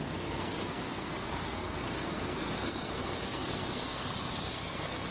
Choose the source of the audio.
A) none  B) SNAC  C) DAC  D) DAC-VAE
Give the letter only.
B